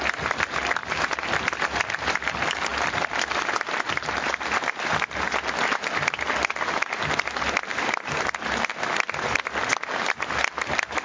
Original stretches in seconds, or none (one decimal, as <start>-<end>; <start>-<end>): 0.0-0.8; 1.6-2.7; 4.8-7.7; 8.7-11.0